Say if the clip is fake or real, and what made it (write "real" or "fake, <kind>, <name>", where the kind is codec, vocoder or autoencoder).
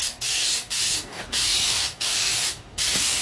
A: fake, codec, DAC